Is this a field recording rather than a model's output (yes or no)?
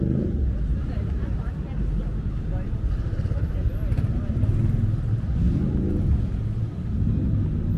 yes